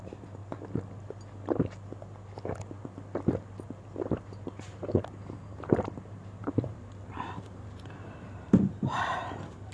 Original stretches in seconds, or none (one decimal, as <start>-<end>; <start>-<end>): 0.4-5.4